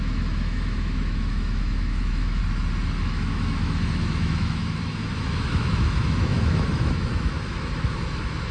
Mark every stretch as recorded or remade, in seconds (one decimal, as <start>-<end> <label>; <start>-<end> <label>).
0.0-2.4 remade; 2.4-3.0 recorded; 3.0-8.5 remade